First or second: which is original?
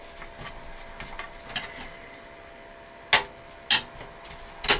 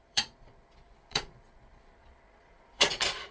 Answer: first